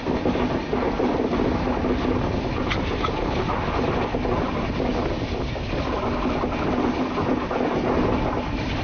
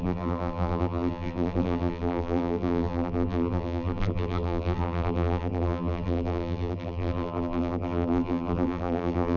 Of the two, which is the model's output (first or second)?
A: second